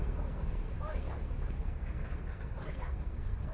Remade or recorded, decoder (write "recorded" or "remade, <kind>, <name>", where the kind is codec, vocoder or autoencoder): remade, codec, SNAC